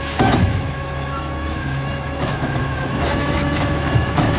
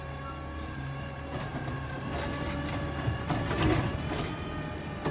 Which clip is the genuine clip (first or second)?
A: second